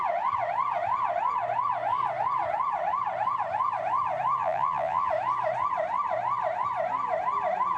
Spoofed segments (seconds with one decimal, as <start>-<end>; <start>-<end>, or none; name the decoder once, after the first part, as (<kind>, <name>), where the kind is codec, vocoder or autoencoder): 4.4-5.1 (vocoder, Vocos)